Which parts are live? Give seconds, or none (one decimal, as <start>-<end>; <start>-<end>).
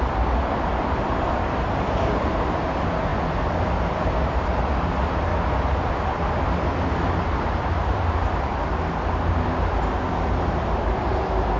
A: 3.1-3.8; 5.3-5.9; 8.5-9.3